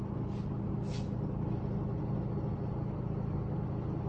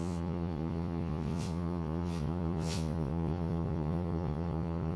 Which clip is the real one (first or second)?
first